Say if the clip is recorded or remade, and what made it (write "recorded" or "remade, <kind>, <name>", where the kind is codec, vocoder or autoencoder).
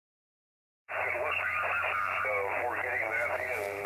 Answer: remade, vocoder, BigVGAN v2